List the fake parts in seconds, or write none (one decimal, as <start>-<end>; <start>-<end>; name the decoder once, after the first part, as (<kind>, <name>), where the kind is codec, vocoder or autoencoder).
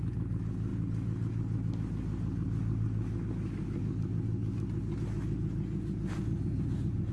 none